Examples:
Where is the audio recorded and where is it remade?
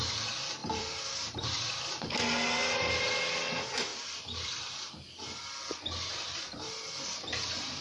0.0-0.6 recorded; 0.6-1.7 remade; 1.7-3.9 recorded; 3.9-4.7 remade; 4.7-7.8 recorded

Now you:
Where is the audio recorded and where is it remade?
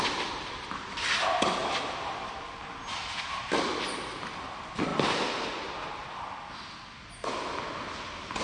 0.0-8.4 recorded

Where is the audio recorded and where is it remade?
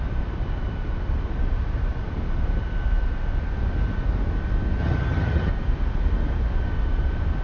0.0-4.8 recorded; 4.8-5.5 remade; 5.5-7.4 recorded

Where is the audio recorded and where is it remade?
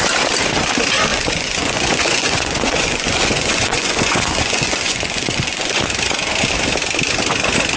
0.0-1.1 recorded; 1.1-5.8 remade; 5.8-7.8 recorded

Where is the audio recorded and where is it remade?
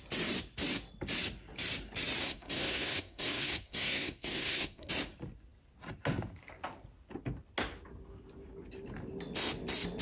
0.0-2.2 recorded; 2.2-4.9 remade; 4.9-10.0 recorded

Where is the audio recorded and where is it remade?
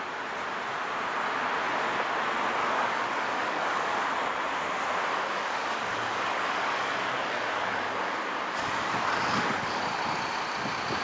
0.0-2.6 recorded; 2.6-4.1 remade; 4.1-5.1 recorded; 5.1-9.8 remade; 9.8-11.0 recorded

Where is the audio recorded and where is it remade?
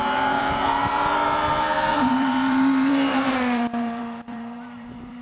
0.0-5.2 remade